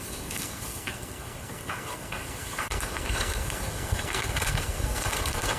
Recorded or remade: remade